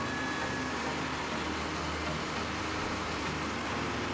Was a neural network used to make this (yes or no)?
no